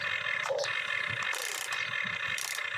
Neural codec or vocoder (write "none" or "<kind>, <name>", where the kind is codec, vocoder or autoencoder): none